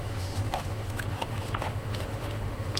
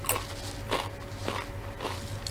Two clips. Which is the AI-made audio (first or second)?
first